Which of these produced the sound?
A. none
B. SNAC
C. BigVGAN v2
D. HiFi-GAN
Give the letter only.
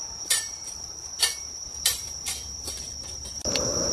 C